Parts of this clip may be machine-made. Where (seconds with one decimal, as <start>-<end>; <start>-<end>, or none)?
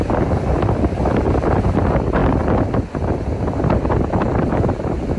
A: 0.0-2.2; 4.1-5.2